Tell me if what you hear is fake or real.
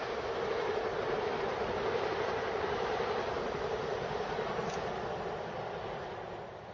real